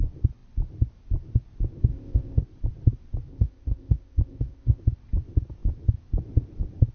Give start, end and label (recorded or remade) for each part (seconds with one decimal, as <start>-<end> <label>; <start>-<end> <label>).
0.0-1.9 recorded; 1.9-2.4 remade; 2.4-3.3 recorded; 3.3-4.8 remade; 4.8-6.9 recorded